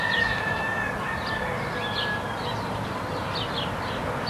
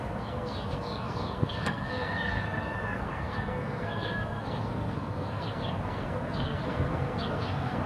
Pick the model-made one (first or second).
second